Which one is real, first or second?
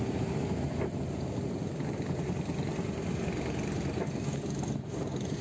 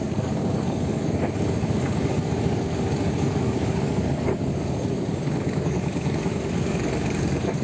first